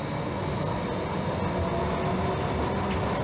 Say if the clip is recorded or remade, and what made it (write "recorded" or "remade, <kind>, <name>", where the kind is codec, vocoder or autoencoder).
recorded